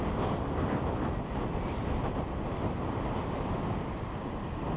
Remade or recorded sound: recorded